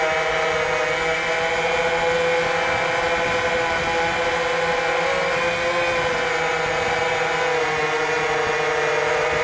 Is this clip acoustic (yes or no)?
yes